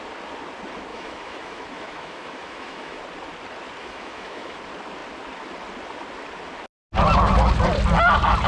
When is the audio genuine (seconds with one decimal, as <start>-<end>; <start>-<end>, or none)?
0.0-0.9; 3.0-3.8; 4.6-8.5

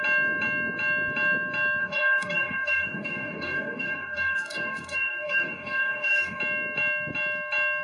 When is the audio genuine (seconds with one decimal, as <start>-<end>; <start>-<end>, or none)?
0.0-1.8; 6.4-7.8

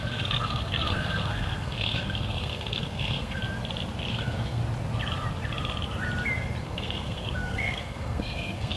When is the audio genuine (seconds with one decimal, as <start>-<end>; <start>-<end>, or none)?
3.4-4.1; 4.6-6.6

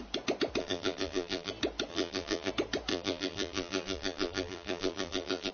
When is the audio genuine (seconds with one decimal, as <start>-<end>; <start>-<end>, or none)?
0.0-0.6; 1.5-1.9; 2.5-2.9

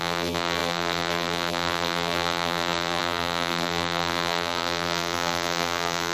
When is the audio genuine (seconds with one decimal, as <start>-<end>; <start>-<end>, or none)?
none

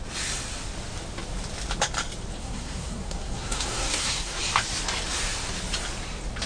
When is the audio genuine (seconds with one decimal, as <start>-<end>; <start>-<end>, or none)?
0.0-2.4; 4.4-6.5

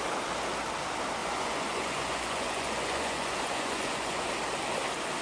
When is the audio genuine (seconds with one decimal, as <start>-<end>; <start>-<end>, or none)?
0.0-1.2; 4.3-5.2